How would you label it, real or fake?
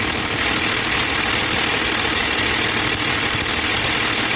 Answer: real